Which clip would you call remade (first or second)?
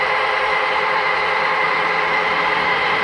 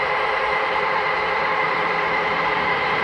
second